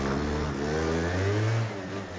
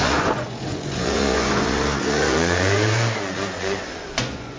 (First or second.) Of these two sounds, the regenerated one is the second